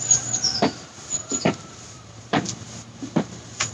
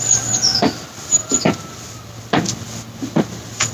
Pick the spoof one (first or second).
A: first